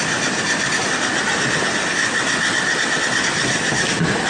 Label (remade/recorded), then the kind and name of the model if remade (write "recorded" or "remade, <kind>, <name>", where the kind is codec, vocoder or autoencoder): recorded